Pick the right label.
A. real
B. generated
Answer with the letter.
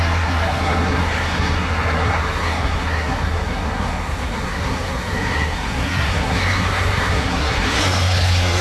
B